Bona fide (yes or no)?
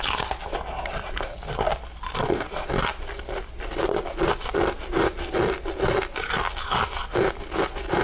yes